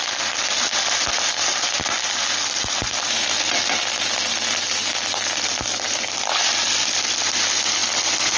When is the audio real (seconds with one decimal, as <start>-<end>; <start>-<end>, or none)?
0.0-8.4